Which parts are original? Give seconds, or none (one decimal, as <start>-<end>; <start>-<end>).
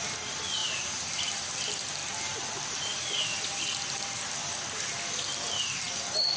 0.0-0.6; 1.3-6.4